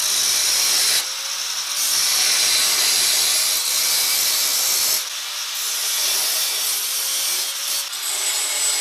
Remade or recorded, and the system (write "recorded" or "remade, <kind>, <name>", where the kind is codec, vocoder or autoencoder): recorded